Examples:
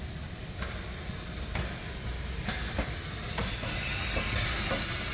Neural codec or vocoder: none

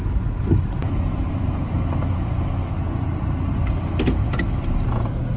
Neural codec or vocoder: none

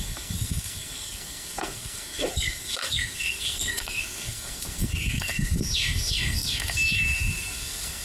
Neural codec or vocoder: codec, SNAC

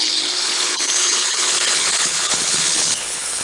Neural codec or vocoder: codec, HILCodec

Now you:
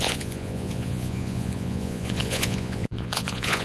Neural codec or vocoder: vocoder, Vocos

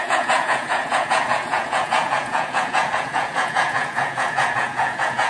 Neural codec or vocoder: vocoder, Vocos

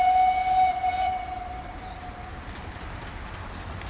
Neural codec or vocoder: none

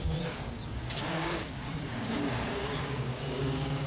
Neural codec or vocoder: codec, DAC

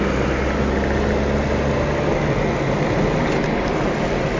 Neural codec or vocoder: none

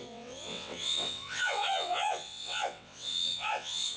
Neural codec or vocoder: vocoder, WaveNeXt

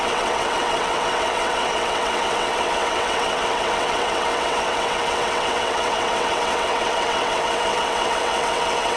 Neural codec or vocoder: vocoder, WaveNeXt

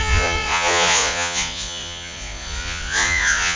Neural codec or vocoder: vocoder, Vocos